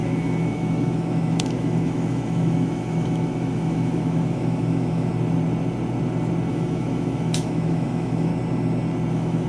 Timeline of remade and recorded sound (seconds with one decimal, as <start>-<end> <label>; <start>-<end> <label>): 0.0-5.1 remade; 5.1-6.5 recorded; 6.5-8.3 remade; 8.3-9.1 recorded; 9.1-9.5 remade